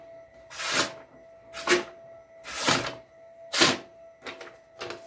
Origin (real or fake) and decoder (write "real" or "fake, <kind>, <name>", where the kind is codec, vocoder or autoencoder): real